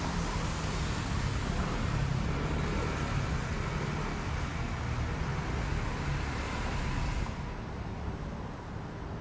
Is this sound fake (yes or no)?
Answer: no